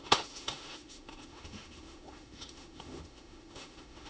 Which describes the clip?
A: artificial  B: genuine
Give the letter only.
A